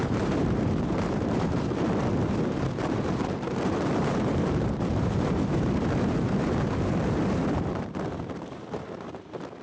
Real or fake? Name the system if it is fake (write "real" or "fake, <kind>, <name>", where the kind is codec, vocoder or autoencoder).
fake, vocoder, BigVGAN v2